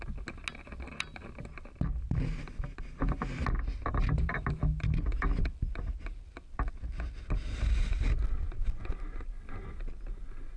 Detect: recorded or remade recorded